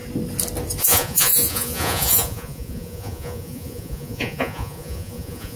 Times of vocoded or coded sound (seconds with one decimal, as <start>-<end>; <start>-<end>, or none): 0.8-5.6

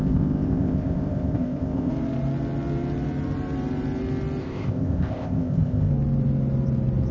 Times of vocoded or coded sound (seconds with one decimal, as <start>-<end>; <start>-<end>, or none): 0.0-1.9; 4.4-5.9

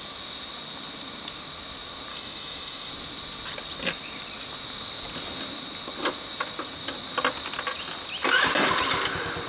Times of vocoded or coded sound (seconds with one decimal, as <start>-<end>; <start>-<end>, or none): 2.1-2.9

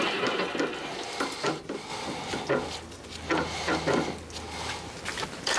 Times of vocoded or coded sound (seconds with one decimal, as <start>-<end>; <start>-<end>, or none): none